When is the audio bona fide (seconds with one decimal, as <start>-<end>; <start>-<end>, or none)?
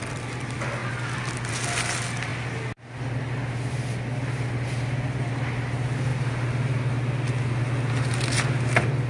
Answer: 0.0-9.1